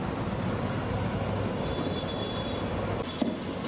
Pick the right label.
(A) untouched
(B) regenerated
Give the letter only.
A